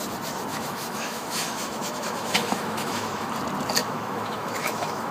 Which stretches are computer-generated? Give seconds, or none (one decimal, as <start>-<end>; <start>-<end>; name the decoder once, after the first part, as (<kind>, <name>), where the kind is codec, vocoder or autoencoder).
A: 0.5-3.3 (autoencoder, DAC-VAE); 3.8-5.1

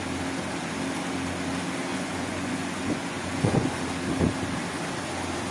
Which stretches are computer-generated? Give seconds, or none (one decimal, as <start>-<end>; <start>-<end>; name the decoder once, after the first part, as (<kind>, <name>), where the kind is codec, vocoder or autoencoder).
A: 1.9-3.8 (vocoder, Vocos)